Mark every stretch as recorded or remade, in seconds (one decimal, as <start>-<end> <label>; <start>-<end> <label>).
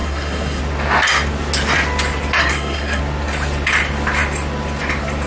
0.0-0.6 remade; 0.6-2.4 recorded; 2.4-3.0 remade; 3.0-5.3 recorded